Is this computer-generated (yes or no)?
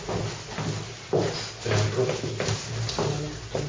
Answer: no